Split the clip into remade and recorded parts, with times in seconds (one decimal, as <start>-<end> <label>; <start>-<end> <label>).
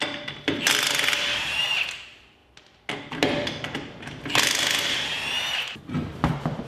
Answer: 0.0-6.7 recorded